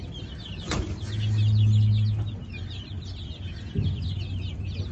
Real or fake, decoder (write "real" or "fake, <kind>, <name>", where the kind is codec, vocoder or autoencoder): real